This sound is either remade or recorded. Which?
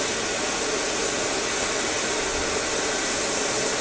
recorded